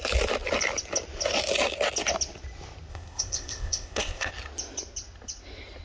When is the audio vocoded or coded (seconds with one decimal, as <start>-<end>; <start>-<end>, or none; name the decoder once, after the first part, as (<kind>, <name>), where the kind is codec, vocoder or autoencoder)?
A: 2.9-4.3 (codec, ZipCodec)